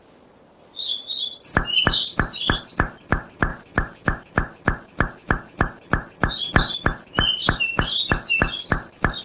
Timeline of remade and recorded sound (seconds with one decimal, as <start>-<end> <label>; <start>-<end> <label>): 0.0-3.5 recorded; 3.5-4.2 remade; 4.2-9.2 recorded